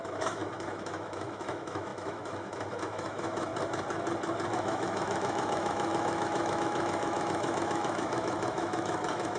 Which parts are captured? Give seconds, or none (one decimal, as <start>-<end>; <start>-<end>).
3.5-4.5